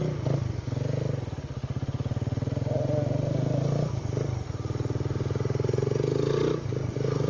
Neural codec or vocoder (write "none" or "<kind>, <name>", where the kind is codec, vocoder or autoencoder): none